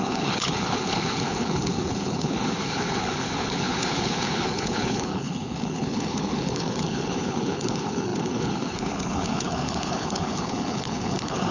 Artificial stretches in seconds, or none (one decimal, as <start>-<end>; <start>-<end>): 0.0-11.5